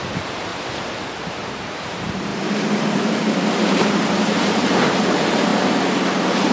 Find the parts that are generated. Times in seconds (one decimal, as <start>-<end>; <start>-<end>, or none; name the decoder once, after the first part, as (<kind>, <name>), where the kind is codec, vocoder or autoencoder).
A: 0.0-0.5 (vocoder, BigVGAN v2); 1.2-5.5; 6.1-6.5